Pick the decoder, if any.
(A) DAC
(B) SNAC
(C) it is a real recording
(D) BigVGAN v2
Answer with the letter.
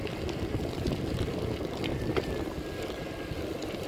C